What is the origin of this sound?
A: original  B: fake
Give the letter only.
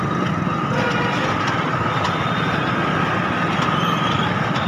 A